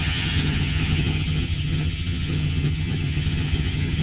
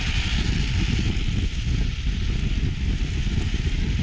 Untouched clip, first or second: second